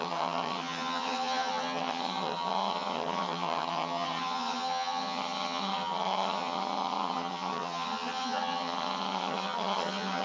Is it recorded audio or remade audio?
remade